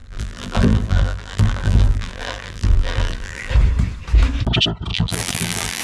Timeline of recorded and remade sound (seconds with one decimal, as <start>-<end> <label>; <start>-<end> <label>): 0.0-3.5 remade; 3.5-4.9 recorded; 4.9-5.8 remade